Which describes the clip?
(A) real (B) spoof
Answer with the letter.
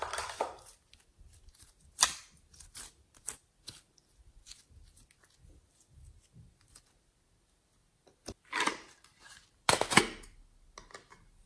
A